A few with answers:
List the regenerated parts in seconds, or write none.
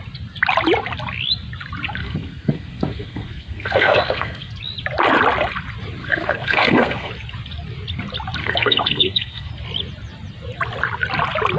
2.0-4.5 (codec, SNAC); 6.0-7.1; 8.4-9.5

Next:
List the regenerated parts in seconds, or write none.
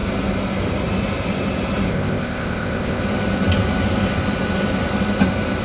1.9-3.0 (codec, ZipCodec)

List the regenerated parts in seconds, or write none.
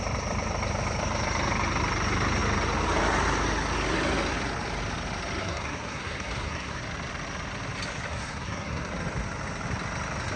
5.4-6.8 (codec, SNAC); 8.1-8.9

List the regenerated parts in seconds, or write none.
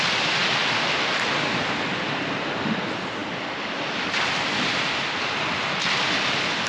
none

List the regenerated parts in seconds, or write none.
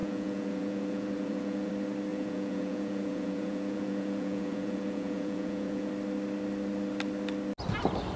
0.0-1.7 (vocoder, Vocos); 2.1-5.9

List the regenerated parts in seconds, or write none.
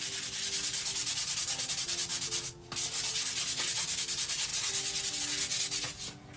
none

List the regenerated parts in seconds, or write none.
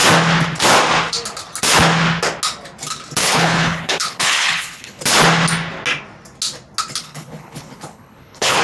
3.2-5.0 (codec, HILCodec); 7.0-8.6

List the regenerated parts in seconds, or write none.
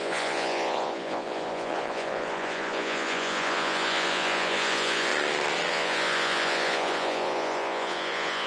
0.0-5.1 (vocoder, Vocos); 5.7-8.5